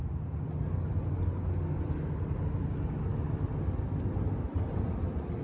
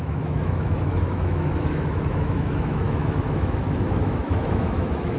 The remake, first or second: second